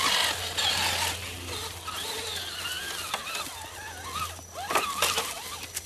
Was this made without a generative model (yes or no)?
yes